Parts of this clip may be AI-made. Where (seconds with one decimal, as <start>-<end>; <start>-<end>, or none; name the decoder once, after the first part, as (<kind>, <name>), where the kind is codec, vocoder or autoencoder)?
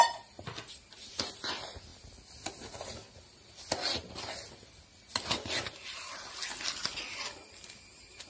none